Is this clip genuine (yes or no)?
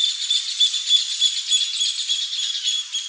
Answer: yes